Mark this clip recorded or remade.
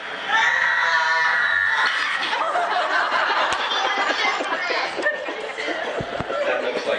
recorded